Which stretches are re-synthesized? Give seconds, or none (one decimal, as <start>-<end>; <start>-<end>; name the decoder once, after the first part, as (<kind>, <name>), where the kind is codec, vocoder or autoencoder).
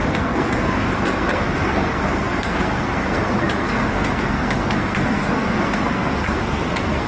0.0-7.1 (codec, SNAC)